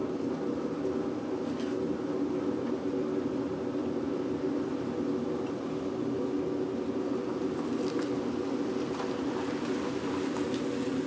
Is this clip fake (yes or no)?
no